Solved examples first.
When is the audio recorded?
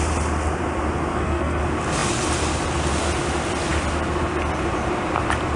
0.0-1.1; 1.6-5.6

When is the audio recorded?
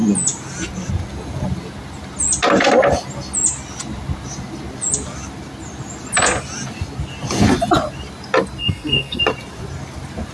0.0-8.6; 9.2-10.3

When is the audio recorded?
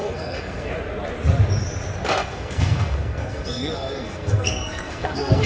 0.7-2.1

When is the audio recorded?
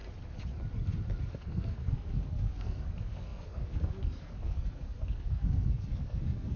0.0-1.3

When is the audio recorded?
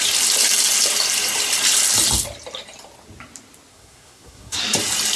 0.0-3.7; 4.6-5.2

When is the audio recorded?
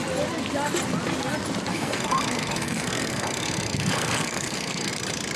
0.0-1.7; 4.9-5.4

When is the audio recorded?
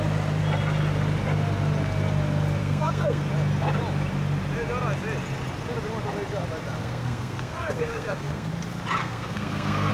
0.0-2.6; 3.3-6.8; 8.5-9.0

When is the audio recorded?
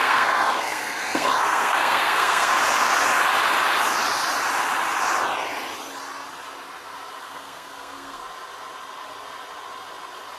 2.5-7.2; 8.2-10.4